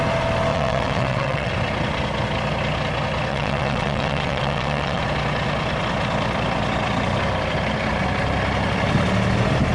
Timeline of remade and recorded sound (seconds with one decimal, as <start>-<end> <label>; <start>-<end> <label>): 0.0-0.5 recorded; 0.5-1.5 remade; 1.5-3.3 recorded; 3.3-5.0 remade; 5.0-9.7 recorded